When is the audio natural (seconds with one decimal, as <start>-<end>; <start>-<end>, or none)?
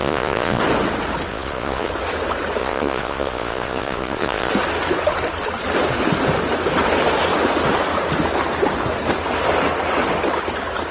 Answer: 0.6-1.3; 1.9-2.6; 4.5-10.9